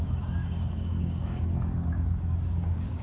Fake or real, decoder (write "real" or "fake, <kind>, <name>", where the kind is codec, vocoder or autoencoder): fake, codec, DAC